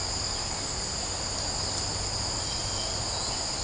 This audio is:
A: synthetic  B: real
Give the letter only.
B